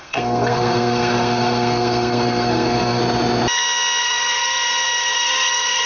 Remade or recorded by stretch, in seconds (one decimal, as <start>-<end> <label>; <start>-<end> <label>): 0.0-3.0 remade; 3.0-4.0 recorded; 4.0-5.9 remade